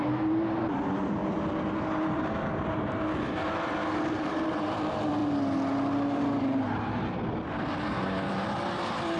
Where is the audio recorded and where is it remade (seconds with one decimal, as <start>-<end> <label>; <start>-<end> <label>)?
0.0-1.2 remade; 1.2-2.1 recorded; 2.1-5.2 remade; 5.2-6.4 recorded; 6.4-9.2 remade